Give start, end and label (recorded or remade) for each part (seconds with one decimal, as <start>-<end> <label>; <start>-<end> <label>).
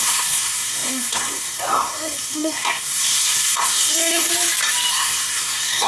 0.0-4.3 remade; 4.3-4.9 recorded; 4.9-5.9 remade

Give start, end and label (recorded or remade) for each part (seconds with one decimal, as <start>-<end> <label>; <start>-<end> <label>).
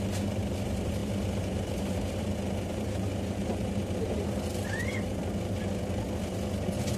0.0-5.2 remade; 5.2-7.0 recorded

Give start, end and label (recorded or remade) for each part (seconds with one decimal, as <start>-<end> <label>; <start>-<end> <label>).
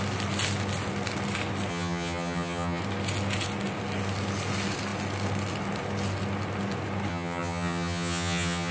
0.0-1.7 recorded; 1.7-2.8 remade; 2.8-7.1 recorded; 7.1-8.7 remade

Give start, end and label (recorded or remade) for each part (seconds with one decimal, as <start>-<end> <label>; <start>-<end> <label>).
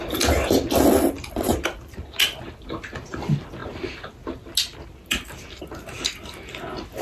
0.0-7.0 recorded